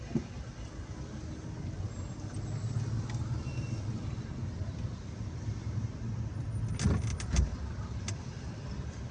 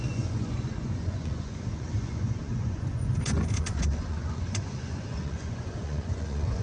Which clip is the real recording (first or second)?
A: first